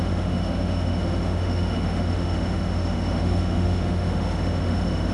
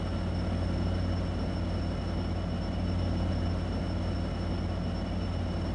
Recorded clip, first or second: second